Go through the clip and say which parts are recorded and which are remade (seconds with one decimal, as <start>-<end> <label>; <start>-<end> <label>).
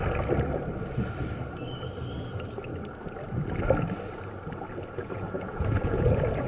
0.0-5.0 recorded; 5.0-6.5 remade